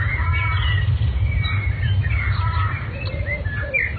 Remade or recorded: recorded